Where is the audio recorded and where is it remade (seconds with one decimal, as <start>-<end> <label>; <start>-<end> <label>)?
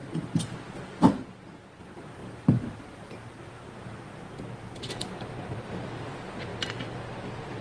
0.0-2.2 remade; 2.2-3.7 recorded; 3.7-6.5 remade; 6.5-7.6 recorded